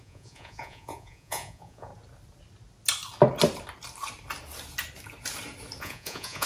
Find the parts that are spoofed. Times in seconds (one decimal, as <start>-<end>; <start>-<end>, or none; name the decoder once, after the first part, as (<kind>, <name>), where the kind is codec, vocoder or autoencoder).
0.0-1.9 (vocoder, Vocos); 5.8-6.5